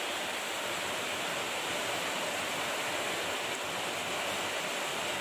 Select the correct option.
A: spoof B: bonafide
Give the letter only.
B